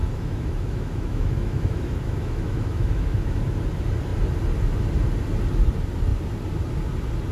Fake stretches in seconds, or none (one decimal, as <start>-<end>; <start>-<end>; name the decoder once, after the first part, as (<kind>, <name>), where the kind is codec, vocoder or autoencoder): 0.0-3.4 (autoencoder, DAC-VAE)